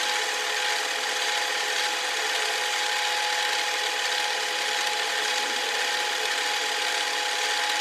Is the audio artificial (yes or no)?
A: no